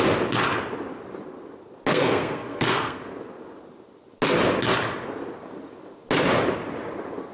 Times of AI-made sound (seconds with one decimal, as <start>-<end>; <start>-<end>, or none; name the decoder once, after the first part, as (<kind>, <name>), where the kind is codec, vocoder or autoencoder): 1.9-3.0 (codec, SNAC)